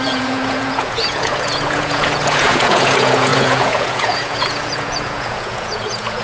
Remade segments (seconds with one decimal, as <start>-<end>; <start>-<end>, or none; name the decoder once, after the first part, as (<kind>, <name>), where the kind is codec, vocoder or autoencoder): 0.0-6.2 (vocoder, Vocos)